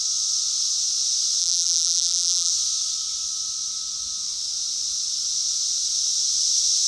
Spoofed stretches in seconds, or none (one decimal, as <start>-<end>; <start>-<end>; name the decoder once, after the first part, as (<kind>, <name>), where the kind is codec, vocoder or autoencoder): 1.4-2.5 (vocoder, BigVGAN v2)